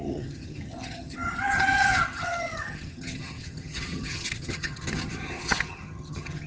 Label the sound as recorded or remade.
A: remade